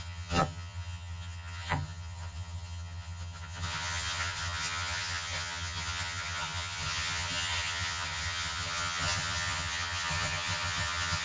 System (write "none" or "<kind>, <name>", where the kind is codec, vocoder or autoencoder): vocoder, HiFi-GAN